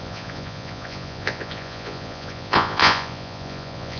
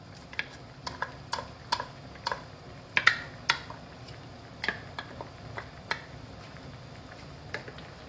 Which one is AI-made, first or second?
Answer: first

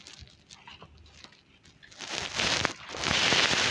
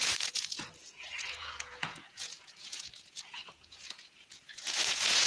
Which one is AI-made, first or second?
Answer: second